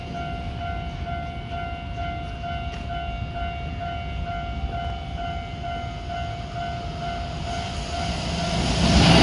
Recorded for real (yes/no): yes